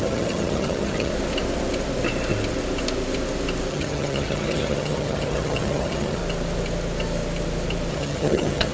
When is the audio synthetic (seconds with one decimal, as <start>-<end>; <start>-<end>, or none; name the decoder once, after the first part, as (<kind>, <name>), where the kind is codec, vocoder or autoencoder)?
0.0-1.1 (vocoder, HiFi-GAN); 3.7-6.2; 7.9-8.7